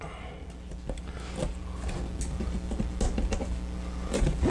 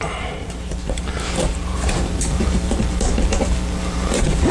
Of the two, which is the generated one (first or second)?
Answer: second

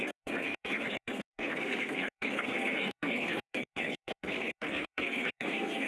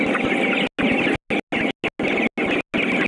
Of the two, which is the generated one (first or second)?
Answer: first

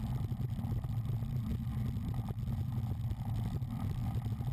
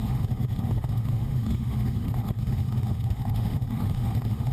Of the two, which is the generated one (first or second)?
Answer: second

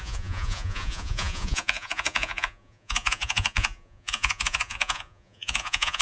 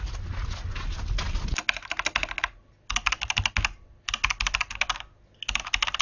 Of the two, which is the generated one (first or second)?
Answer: first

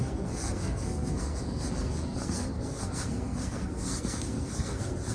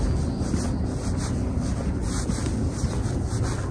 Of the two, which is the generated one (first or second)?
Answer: first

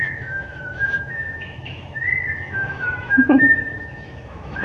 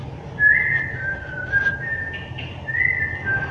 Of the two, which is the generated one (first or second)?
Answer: first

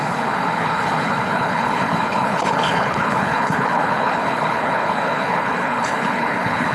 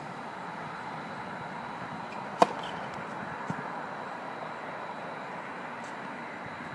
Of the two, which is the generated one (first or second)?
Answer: first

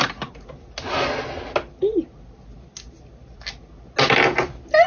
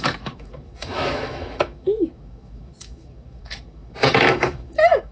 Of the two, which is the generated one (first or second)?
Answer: second